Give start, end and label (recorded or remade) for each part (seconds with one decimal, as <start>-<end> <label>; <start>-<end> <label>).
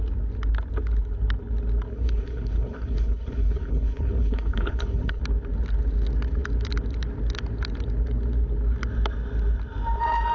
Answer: 0.0-1.9 recorded; 1.9-5.2 remade; 5.2-10.3 recorded